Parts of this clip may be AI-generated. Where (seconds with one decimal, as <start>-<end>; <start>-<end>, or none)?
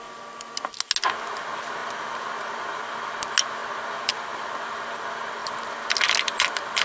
1.8-2.6; 3.6-4.2